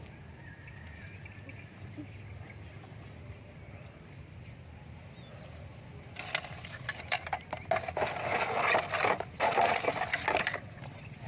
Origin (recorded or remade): recorded